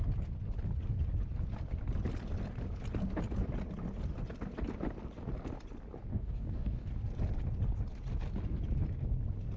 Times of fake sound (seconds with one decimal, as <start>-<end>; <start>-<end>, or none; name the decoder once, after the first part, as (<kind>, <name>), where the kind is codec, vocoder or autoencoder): 6.1-6.9 (codec, DAC)